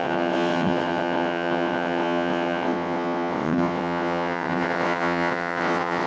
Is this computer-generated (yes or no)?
yes